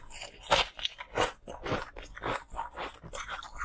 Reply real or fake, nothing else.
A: real